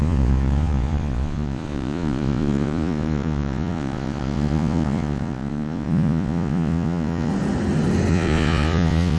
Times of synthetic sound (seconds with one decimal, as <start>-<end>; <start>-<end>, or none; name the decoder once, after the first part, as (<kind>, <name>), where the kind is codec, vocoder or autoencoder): 0.0-7.3 (vocoder, Vocos); 8.1-9.2